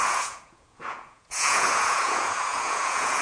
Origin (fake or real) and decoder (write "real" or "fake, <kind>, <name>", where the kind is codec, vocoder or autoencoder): fake, vocoder, Vocos